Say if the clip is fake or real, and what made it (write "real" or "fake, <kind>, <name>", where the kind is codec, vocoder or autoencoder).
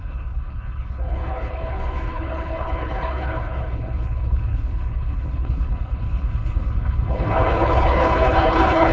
fake, codec, HILCodec